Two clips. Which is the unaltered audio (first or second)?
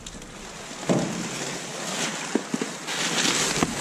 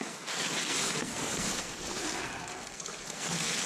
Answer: first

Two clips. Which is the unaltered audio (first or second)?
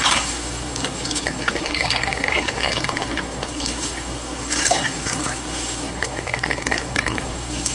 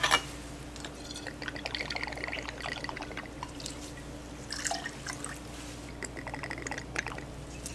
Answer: second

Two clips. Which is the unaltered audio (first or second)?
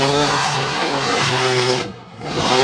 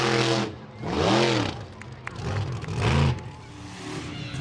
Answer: second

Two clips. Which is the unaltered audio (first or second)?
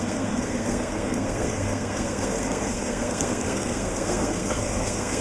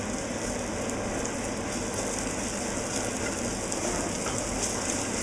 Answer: second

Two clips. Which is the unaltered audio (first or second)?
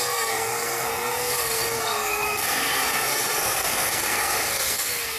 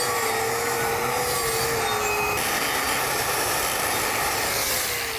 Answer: second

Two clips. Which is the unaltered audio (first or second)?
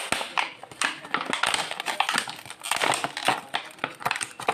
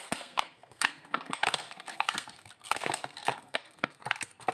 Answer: first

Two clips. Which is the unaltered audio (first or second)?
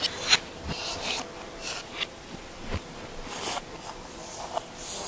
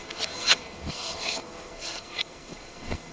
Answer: first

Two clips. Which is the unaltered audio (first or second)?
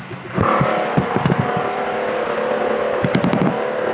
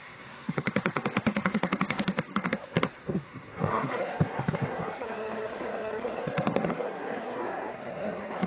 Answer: first